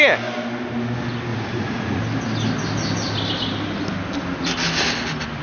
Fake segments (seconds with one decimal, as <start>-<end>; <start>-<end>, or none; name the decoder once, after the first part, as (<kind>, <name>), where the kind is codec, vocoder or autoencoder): 1.3-2.0 (vocoder, Vocos)